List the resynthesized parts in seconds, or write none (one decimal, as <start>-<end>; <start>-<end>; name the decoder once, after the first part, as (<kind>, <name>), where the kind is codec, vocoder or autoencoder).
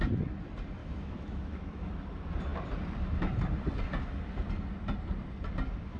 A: 0.8-1.9 (autoencoder, DAC-VAE)